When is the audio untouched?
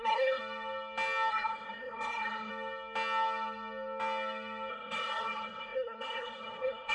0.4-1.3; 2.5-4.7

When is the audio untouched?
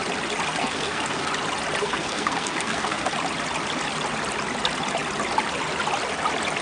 0.0-0.6; 1.3-1.8; 3.1-6.6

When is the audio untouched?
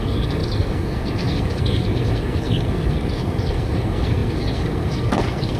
none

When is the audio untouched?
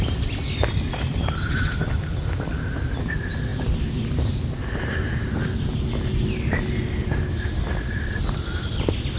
0.0-9.2